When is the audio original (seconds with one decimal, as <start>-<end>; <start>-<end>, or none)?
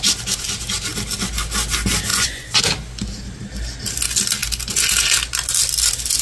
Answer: 0.0-2.1; 2.6-6.2